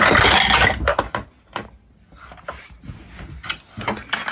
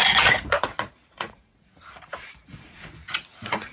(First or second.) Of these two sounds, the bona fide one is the first